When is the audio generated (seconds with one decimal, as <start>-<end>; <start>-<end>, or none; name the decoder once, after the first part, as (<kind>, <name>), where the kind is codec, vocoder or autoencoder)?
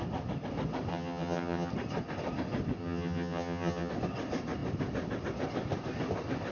0.9-1.7 (vocoder, HiFi-GAN); 2.8-3.9